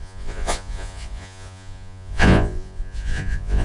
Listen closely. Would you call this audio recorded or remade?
remade